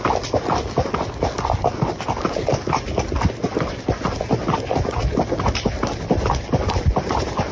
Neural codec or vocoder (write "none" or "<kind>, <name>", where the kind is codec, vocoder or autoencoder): none